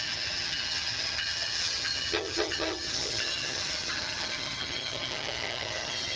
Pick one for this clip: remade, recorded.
remade